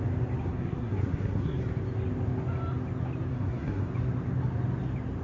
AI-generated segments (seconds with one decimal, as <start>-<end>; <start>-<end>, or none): 0.4-1.6; 3.3-3.9